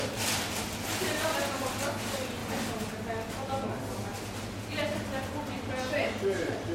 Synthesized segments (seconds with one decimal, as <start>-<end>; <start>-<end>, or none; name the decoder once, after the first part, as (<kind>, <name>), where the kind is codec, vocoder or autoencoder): none

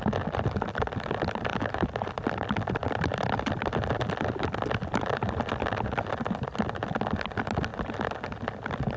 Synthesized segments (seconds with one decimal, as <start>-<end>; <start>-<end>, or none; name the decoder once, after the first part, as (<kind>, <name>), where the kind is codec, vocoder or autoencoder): 1.5-2.1 (vocoder, BigVGAN v2)

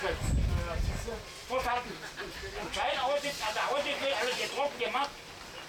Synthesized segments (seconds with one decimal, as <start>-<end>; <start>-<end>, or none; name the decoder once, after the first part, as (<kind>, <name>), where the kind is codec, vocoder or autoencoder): 1.4-4.8 (vocoder, BigVGAN v2)

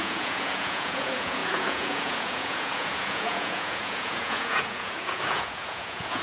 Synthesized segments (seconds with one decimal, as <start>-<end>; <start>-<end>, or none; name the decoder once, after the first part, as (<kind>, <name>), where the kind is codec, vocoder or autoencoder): 0.0-6.2 (vocoder, Vocos)

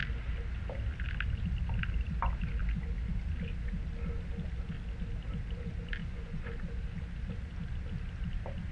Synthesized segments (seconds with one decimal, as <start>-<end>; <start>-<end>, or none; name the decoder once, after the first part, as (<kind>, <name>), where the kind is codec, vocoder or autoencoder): 6.0-6.5 (vocoder, Vocos)

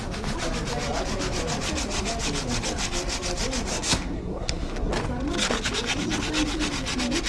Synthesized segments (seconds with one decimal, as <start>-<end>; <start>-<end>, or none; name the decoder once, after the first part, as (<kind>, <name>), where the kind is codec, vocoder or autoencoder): 3.7-4.9 (codec, SNAC)

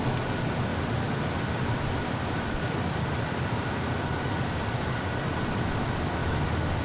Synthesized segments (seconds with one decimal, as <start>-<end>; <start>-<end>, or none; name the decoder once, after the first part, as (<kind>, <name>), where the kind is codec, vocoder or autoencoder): none

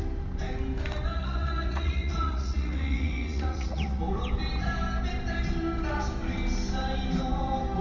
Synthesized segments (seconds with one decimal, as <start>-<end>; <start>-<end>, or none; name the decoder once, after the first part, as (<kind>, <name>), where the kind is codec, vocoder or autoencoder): 1.1-4.0 (vocoder, Vocos)